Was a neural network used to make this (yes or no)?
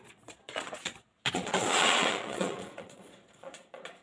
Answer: yes